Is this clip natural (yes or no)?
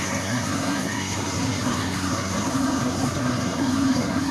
no